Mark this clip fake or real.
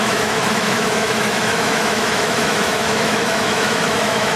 fake